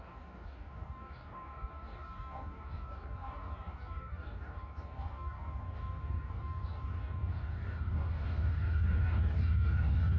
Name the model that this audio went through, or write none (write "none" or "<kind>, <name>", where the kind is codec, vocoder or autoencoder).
codec, DAC